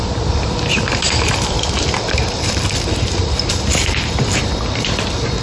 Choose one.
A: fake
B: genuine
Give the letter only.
A